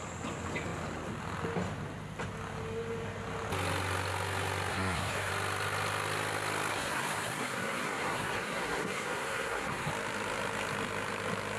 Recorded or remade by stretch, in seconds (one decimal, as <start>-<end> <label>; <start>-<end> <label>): 0.0-4.7 recorded; 4.7-5.3 remade; 5.3-6.7 recorded; 6.7-9.9 remade; 9.9-11.6 recorded